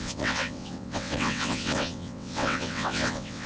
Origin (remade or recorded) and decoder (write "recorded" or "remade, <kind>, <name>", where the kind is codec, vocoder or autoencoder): remade, vocoder, WaveNeXt